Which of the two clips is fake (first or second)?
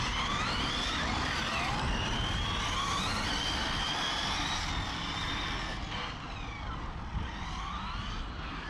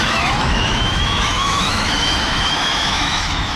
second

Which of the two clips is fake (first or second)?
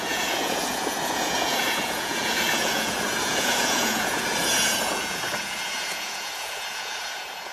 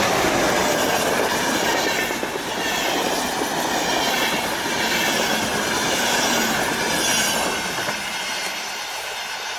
first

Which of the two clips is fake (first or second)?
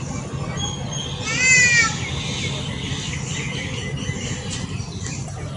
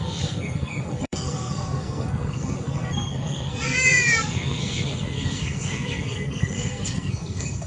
second